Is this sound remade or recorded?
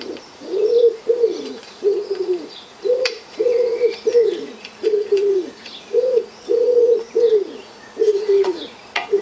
remade